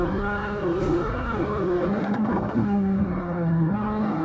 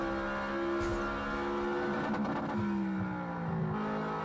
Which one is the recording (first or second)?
second